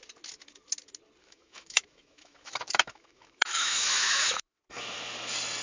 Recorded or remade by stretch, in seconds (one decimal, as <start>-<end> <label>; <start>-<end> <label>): 0.0-1.2 recorded; 1.2-4.6 remade; 4.6-5.6 recorded